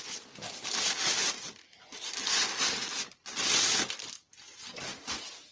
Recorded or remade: recorded